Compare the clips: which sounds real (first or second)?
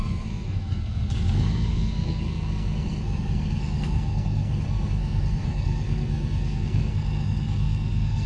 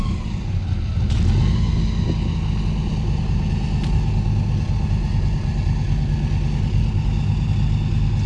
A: second